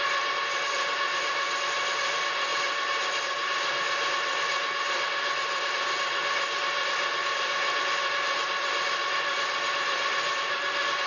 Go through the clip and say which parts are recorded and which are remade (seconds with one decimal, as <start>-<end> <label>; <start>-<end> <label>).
0.0-11.1 recorded